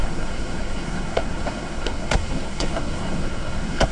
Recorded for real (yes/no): no